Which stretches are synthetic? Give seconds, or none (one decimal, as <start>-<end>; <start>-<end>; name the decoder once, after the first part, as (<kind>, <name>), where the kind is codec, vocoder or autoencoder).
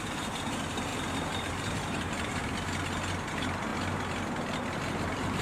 0.0-0.9 (vocoder, BigVGAN v2); 1.5-2.4; 3.3-3.7; 4.8-5.4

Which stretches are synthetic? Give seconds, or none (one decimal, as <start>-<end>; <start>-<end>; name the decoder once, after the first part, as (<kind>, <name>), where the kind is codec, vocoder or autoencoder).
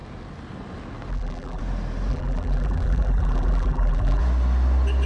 1.1-1.6 (vocoder, BigVGAN v2); 2.1-4.2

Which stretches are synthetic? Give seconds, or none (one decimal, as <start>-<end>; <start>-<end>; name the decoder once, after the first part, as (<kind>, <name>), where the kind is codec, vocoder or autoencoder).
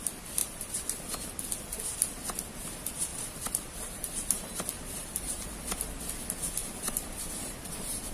0.4-1.0 (vocoder, BigVGAN v2); 3.1-6.0; 6.6-8.1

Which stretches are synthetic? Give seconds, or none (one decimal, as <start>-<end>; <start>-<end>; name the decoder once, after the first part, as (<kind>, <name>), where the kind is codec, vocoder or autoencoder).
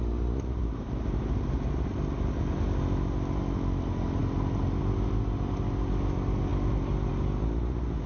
0.6-1.3 (vocoder, BigVGAN v2)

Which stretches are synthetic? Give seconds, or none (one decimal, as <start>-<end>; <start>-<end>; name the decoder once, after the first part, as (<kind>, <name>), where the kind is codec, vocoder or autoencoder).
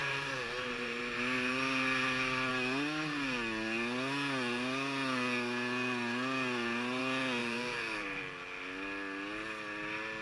0.0-1.0 (vocoder, BigVGAN v2); 7.4-8.2